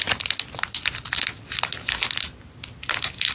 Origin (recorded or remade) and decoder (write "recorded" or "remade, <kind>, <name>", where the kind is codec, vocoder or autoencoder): recorded